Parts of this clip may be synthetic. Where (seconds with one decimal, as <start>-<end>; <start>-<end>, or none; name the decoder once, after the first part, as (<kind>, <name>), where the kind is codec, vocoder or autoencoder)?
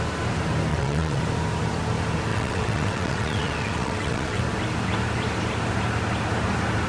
0.7-1.2 (vocoder, WaveNeXt); 2.3-4.4